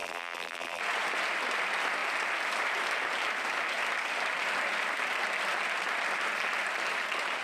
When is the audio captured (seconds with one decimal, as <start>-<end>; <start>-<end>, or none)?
0.8-7.4